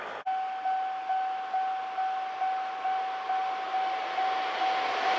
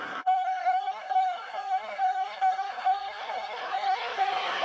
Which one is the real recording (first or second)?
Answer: first